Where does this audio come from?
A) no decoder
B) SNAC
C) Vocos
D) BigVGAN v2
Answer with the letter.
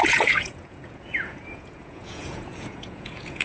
C